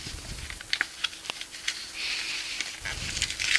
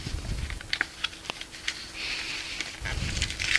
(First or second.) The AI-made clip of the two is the second